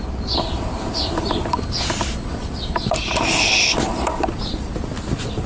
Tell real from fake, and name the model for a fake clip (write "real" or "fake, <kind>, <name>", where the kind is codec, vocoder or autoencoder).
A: real